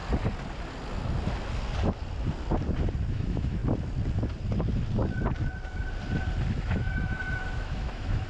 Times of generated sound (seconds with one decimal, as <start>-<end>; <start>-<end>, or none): 3.1-3.6; 6.5-8.3